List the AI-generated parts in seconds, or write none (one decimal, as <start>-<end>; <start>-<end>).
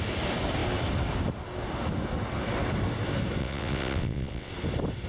3.4-4.5